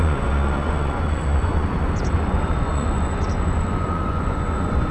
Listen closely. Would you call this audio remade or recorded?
remade